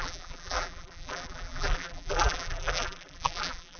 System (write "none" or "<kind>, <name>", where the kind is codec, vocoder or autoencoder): vocoder, BigVGAN v2